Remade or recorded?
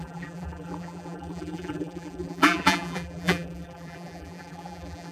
remade